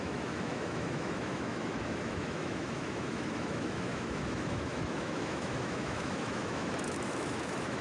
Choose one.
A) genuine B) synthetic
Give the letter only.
B